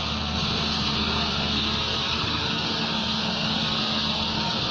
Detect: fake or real fake